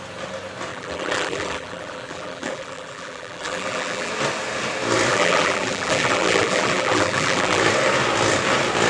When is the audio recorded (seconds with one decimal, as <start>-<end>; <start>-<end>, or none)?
0.0-0.7; 4.1-5.1; 7.6-8.9

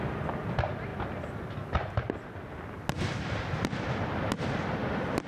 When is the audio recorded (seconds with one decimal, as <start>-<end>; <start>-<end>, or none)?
0.0-5.3

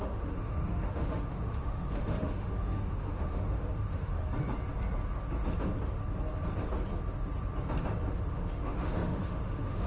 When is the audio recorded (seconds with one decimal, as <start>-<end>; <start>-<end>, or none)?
4.2-8.3

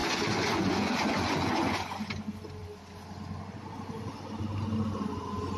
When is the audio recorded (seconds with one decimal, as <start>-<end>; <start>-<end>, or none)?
2.1-5.6

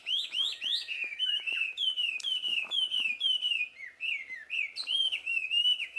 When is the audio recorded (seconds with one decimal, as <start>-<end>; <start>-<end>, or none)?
3.6-5.1

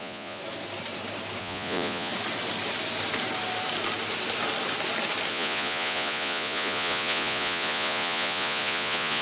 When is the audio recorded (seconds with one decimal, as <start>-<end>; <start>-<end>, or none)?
0.4-1.4; 2.1-5.3

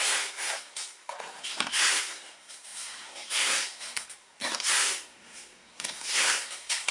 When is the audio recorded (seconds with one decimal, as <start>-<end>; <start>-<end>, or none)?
none

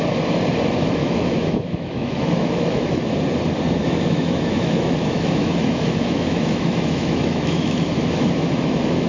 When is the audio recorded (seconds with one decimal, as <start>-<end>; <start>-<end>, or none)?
0.0-1.0; 3.1-3.8